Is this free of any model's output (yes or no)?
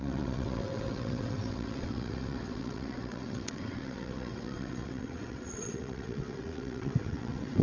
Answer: no